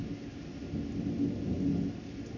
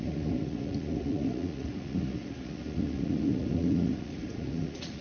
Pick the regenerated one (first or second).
second